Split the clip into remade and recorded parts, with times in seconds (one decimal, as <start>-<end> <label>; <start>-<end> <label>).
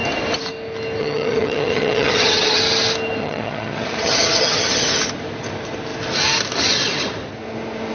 0.0-1.0 recorded; 1.0-2.6 remade; 2.6-3.2 recorded; 3.2-4.7 remade; 4.7-7.9 recorded